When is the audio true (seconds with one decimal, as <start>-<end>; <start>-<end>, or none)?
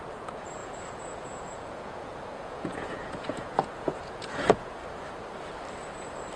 4.8-6.4